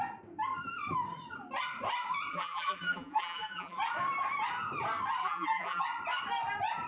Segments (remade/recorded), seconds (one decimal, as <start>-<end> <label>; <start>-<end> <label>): 0.0-2.3 recorded; 2.3-3.8 remade; 3.8-5.2 recorded; 5.2-5.8 remade; 5.8-6.9 recorded